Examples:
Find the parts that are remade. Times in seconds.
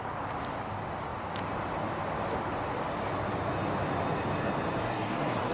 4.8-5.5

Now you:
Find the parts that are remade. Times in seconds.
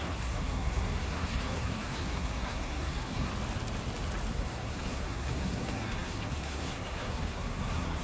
0.0-3.3; 4.3-8.0